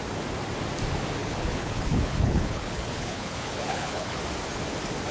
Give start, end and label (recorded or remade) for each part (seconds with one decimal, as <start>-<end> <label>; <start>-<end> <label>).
0.0-1.2 recorded; 1.2-4.2 remade; 4.2-5.1 recorded